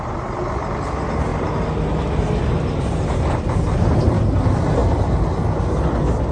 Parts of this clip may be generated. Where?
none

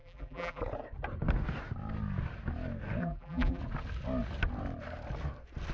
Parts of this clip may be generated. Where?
0.0-0.6; 3.0-3.6

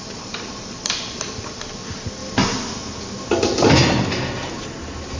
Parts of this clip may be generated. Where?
none

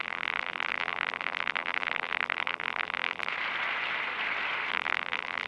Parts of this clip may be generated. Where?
0.0-3.3; 4.7-5.5

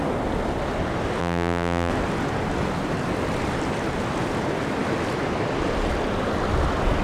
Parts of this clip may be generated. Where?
1.2-1.9